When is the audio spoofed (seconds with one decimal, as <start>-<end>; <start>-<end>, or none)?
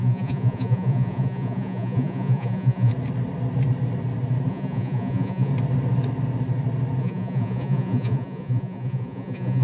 0.0-2.9; 4.5-5.5; 7.0-9.6